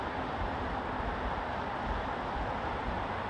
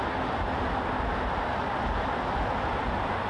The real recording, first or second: second